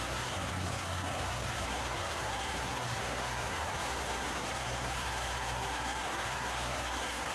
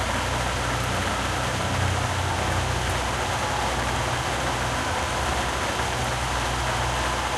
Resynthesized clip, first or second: first